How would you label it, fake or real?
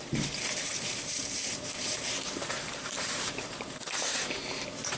fake